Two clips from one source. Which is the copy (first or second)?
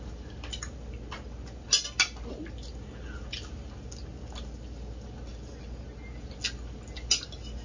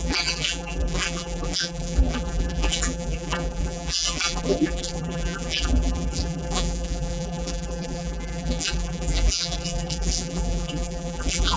second